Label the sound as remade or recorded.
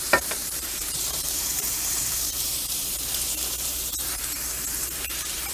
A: remade